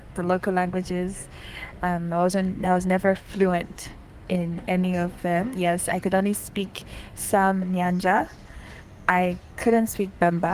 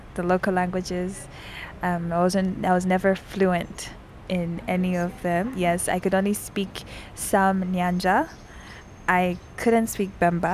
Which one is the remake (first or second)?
first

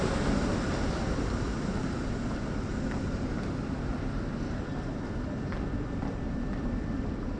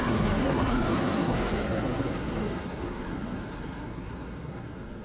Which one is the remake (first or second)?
second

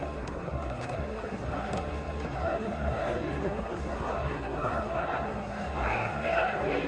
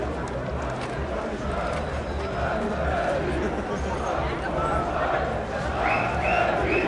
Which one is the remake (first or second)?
first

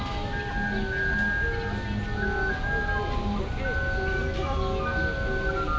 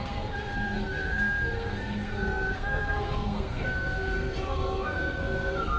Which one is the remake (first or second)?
second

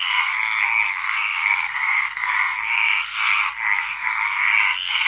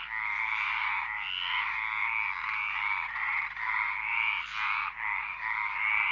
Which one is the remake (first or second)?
first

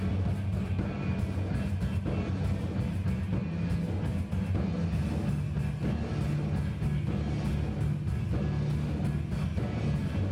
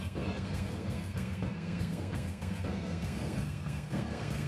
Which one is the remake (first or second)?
second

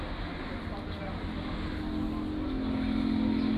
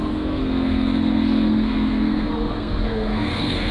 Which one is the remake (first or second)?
second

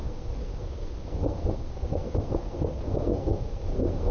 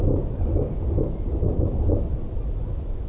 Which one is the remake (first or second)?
first